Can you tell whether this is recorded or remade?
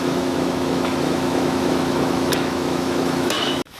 remade